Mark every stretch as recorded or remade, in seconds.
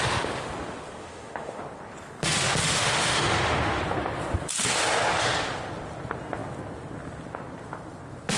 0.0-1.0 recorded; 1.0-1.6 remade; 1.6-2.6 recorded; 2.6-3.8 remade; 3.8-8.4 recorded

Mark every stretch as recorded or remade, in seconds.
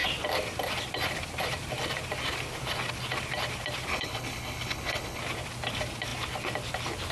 0.0-3.9 recorded; 3.9-5.2 remade; 5.2-7.1 recorded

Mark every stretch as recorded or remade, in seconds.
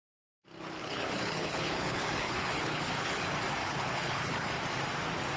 0.0-0.8 recorded; 0.8-3.2 remade; 3.2-3.6 recorded; 3.6-4.5 remade; 4.5-5.4 recorded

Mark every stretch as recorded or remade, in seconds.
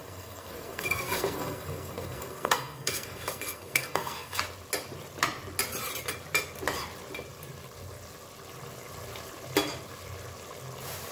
0.0-4.4 remade; 4.4-11.1 recorded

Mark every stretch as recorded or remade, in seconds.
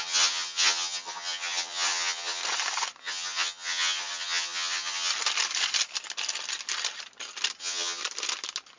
0.0-2.4 remade; 2.4-3.0 recorded; 3.0-5.1 remade; 5.1-7.6 recorded; 7.6-8.0 remade; 8.0-8.8 recorded